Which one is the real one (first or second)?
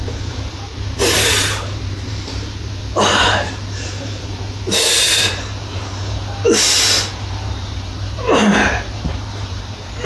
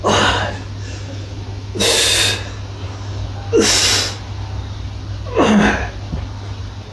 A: second